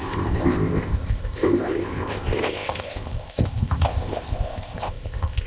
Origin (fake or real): fake